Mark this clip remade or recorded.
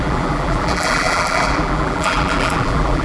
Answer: remade